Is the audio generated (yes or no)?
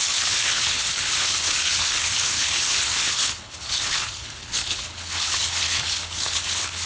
yes